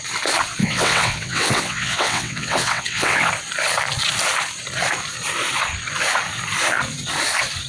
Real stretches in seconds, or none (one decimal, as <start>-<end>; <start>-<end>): 0.0-0.6; 3.3-7.7